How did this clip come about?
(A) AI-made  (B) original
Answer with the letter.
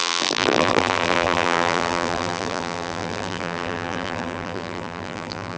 A